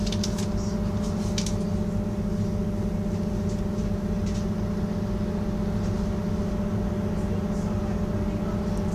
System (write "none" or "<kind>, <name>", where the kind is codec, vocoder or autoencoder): none